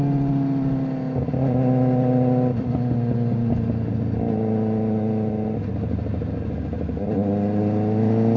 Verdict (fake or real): real